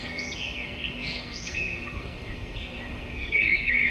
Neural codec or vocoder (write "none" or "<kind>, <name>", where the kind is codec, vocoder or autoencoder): codec, SNAC